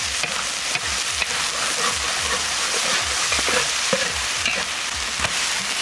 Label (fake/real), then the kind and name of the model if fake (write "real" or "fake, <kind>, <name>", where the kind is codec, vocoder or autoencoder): real